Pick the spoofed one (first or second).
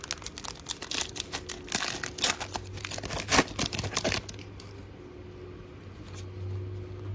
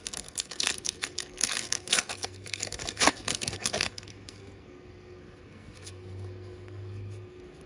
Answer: second